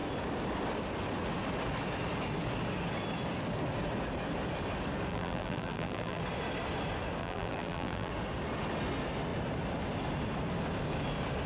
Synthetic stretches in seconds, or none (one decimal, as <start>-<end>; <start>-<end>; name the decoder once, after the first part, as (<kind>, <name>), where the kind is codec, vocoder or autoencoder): 5.1-6.2 (vocoder, BigVGAN v2); 7.2-8.1